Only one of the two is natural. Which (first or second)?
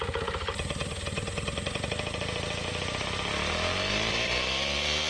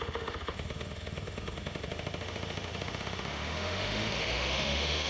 first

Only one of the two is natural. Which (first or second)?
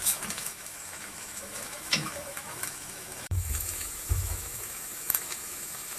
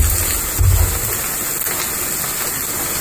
second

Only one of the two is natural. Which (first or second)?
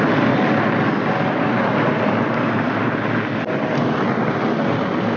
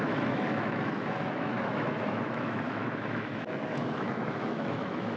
first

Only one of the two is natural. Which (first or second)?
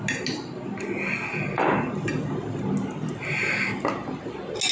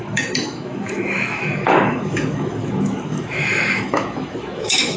first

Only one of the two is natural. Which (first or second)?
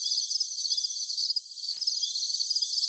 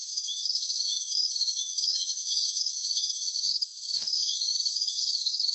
first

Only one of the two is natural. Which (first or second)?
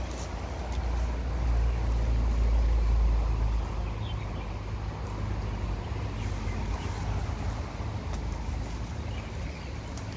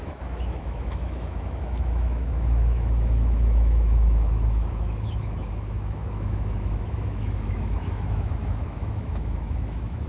first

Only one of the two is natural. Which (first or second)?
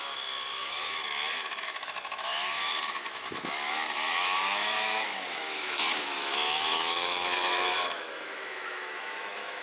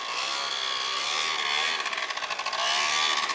second